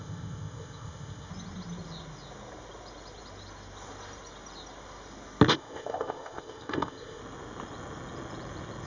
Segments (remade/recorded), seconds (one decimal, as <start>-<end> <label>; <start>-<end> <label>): 0.0-1.3 remade; 1.3-5.5 recorded; 5.5-7.2 remade; 7.2-8.9 recorded